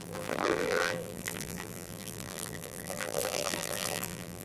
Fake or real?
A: fake